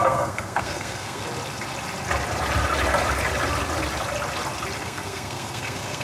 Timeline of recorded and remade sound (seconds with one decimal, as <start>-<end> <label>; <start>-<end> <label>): 0.0-1.2 remade; 1.2-4.8 recorded; 4.8-6.0 remade

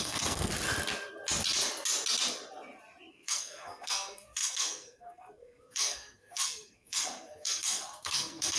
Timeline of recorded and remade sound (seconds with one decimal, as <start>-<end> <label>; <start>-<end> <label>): 0.0-0.5 remade; 0.5-3.1 recorded; 3.1-8.6 remade

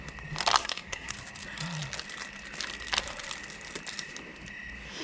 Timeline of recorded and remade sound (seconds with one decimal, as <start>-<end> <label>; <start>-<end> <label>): 0.0-0.6 recorded; 0.6-1.1 remade; 1.1-5.0 recorded

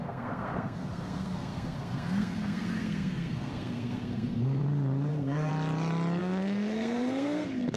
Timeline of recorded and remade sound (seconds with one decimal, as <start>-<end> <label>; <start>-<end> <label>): 0.0-4.6 remade; 4.6-5.1 recorded; 5.1-5.5 remade; 5.5-6.2 recorded; 6.2-7.8 remade

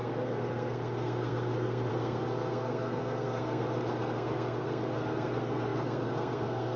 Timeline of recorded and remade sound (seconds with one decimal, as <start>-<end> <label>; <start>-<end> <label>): 0.0-6.8 remade